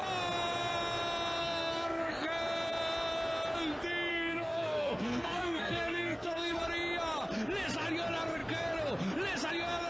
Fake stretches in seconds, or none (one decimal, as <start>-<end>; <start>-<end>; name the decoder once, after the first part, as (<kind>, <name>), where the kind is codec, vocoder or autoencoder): 1.4-2.1 (codec, SNAC); 4.1-6.6